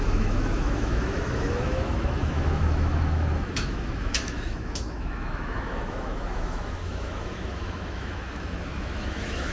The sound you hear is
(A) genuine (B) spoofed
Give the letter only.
B